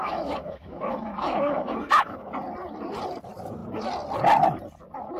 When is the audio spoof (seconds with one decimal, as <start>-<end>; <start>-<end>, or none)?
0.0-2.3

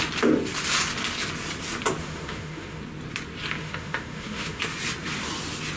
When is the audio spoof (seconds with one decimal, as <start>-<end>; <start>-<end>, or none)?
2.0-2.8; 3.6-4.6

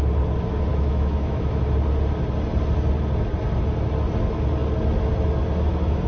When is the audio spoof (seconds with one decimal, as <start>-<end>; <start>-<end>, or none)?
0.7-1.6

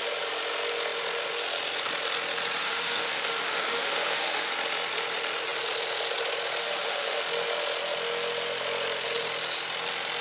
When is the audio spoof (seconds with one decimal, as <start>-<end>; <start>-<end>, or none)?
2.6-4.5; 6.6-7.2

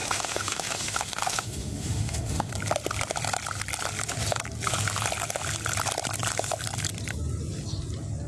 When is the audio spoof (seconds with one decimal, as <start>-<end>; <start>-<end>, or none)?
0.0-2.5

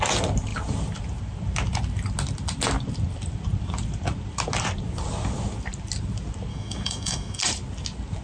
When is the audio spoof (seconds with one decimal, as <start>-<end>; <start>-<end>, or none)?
6.5-7.4

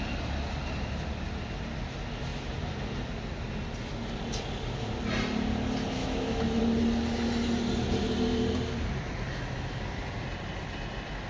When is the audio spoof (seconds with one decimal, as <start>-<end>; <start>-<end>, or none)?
6.0-6.6

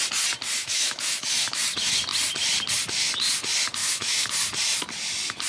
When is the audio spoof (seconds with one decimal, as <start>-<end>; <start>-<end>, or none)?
0.6-1.6; 3.8-4.3